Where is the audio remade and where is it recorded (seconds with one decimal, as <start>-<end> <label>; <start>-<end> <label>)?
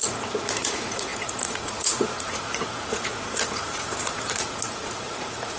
0.0-5.6 remade